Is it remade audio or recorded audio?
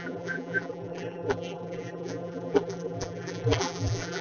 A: remade